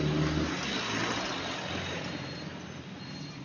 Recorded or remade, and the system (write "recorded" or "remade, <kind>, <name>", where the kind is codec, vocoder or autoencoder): recorded